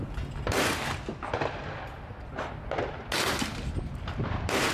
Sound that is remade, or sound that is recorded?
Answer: recorded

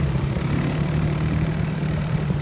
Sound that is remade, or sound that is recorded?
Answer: remade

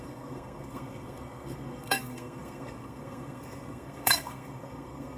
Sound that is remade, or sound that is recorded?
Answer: remade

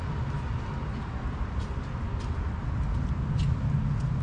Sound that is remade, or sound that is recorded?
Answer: recorded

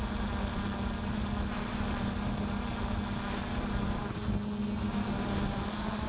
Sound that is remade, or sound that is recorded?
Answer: recorded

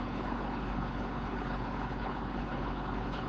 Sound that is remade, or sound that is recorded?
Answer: remade